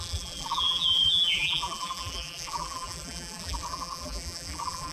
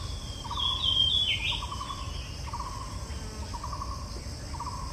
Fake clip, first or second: first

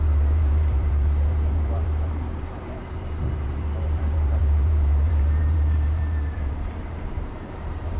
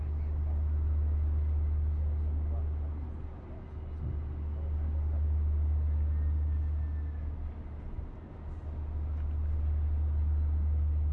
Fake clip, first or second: first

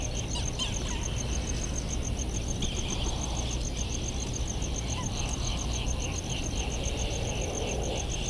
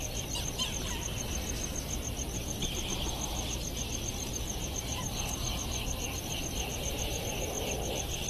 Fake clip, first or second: second